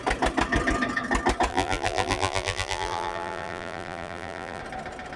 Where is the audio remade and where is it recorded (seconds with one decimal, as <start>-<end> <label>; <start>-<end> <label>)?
0.0-1.5 recorded; 1.5-4.6 remade; 4.6-5.2 recorded